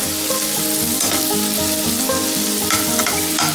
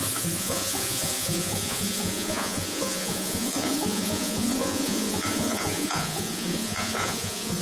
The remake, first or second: second